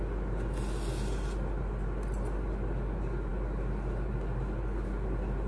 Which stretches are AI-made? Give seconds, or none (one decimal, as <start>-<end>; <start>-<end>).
none